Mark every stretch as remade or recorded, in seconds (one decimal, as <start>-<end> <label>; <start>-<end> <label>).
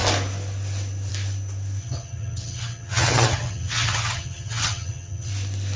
0.0-1.8 recorded; 1.8-5.3 remade; 5.3-5.8 recorded